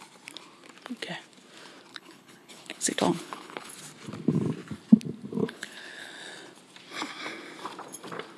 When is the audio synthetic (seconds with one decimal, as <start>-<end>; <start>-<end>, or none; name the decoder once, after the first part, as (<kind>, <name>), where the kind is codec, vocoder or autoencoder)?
1.9-3.7 (codec, HILCodec); 5.4-6.1